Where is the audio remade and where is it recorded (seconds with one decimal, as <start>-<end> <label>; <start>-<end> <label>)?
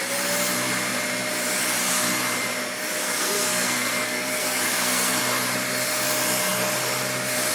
0.0-3.0 recorded; 3.0-5.2 remade; 5.2-7.5 recorded